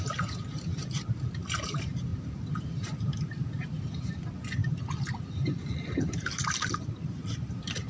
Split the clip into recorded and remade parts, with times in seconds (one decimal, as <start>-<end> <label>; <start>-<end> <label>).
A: 0.0-4.6 remade; 4.6-5.9 recorded; 5.9-7.9 remade